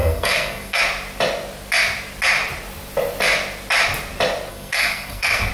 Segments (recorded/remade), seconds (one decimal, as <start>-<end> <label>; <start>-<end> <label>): 0.0-0.8 remade; 0.8-4.5 recorded; 4.5-5.5 remade